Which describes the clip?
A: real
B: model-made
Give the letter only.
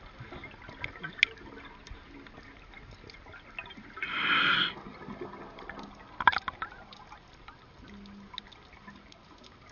A